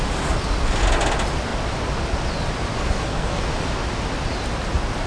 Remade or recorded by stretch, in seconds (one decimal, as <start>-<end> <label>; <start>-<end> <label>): 0.0-2.7 recorded; 2.7-3.4 remade; 3.4-5.1 recorded